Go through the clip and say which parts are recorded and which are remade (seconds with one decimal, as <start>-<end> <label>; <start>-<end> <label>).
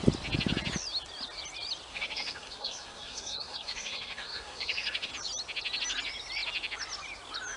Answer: 0.0-1.9 recorded; 1.9-5.1 remade; 5.1-7.6 recorded